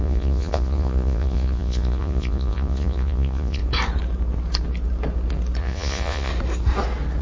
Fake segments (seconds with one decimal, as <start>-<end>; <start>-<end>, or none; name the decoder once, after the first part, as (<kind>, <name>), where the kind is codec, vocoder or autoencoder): 0.0-3.6 (vocoder, Vocos); 5.6-6.3